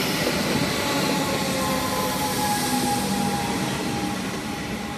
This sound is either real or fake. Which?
real